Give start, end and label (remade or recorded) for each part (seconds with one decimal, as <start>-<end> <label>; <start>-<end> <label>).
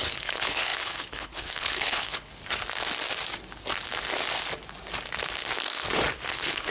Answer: 0.0-2.3 remade; 2.3-6.3 recorded; 6.3-6.7 remade